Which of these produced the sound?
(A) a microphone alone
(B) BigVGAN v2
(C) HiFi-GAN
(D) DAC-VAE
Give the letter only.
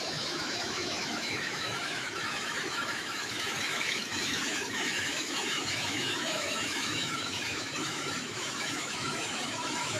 D